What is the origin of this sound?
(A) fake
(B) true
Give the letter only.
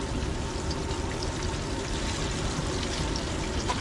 B